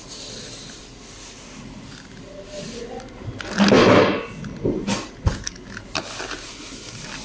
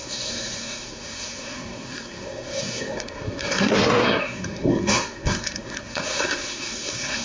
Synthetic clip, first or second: second